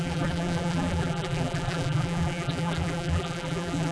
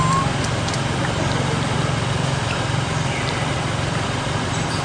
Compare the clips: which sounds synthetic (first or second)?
first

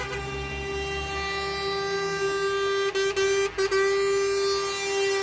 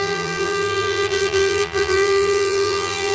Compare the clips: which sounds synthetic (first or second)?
second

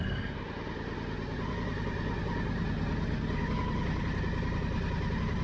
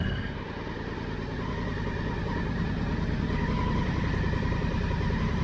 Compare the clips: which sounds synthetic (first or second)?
second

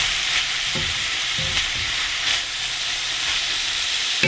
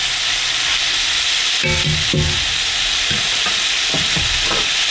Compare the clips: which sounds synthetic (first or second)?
first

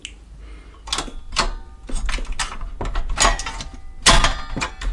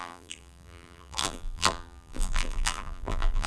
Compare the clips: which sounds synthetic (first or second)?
second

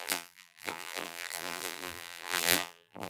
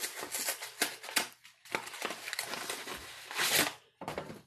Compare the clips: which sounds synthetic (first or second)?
first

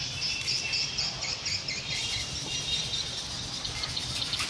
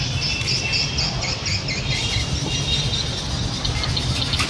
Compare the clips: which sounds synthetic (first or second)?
first